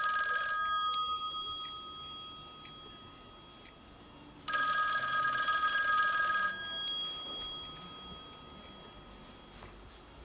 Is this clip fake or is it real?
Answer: real